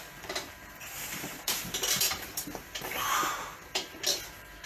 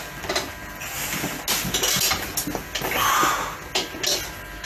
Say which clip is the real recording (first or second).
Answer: second